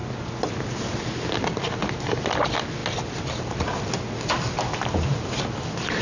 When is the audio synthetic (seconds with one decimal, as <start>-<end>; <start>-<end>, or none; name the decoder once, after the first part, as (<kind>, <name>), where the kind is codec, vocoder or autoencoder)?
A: none